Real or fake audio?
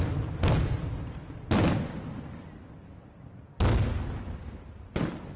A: real